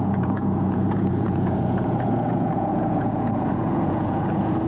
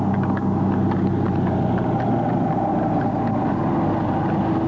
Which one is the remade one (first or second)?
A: first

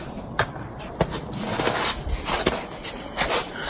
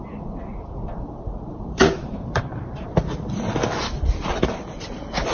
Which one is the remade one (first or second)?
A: second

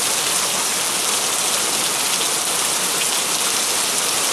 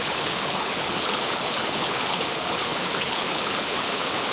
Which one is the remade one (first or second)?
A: second